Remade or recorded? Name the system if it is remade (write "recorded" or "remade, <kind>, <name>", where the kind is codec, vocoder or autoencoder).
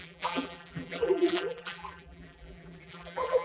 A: remade, vocoder, BigVGAN v2